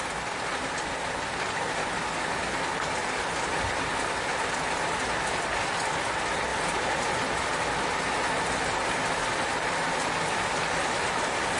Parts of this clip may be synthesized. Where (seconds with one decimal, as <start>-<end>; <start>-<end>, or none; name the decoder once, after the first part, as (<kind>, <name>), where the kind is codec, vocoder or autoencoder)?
3.0-4.4 (vocoder, BigVGAN v2)

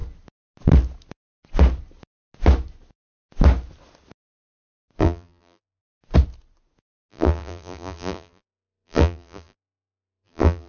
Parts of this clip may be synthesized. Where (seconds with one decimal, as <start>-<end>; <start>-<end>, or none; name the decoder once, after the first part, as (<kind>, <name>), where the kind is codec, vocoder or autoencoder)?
5.0-5.8 (vocoder, BigVGAN v2); 7.1-10.7

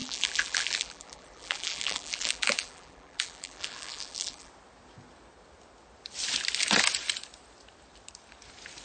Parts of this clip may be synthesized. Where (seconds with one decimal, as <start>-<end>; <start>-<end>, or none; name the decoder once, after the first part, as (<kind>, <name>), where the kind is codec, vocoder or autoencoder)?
0.0-4.5 (vocoder, BigVGAN v2)

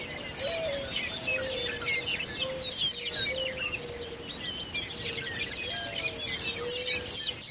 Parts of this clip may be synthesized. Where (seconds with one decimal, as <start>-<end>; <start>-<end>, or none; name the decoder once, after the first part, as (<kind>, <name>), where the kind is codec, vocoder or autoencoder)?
none

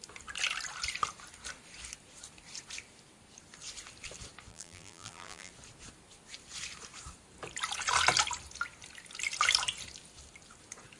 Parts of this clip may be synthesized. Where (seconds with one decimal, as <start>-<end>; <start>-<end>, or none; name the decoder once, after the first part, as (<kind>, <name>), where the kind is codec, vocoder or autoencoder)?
4.5-5.5 (vocoder, BigVGAN v2)

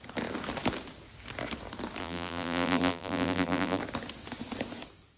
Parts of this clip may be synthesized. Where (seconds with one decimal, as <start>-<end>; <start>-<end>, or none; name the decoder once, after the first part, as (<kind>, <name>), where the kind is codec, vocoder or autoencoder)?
2.0-3.8 (vocoder, BigVGAN v2)